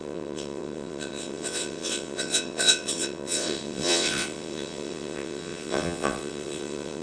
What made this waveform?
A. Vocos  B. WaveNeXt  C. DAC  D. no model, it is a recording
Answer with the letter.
B